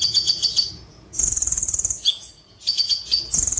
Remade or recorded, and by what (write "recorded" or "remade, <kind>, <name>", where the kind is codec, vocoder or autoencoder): remade, vocoder, Vocos